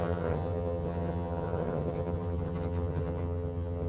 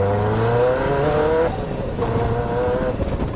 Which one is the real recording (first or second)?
second